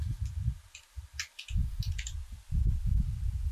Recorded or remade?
recorded